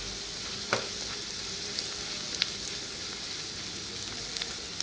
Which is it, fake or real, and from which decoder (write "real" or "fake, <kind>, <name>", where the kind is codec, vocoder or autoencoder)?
real